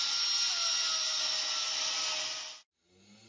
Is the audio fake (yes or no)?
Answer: no